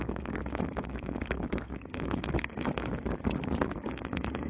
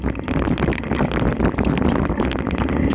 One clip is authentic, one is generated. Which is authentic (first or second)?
second